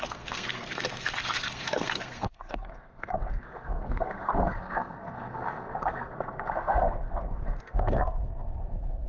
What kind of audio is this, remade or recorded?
remade